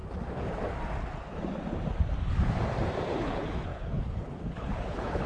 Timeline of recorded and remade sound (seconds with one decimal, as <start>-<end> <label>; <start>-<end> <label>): 0.0-3.2 recorded; 3.2-5.3 remade